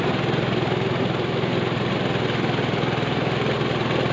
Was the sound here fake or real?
real